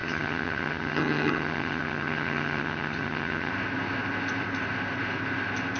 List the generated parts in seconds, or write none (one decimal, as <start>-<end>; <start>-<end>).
0.0-3.5